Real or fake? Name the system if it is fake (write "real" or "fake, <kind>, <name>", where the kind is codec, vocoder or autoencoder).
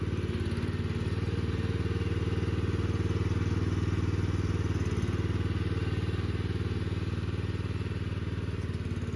real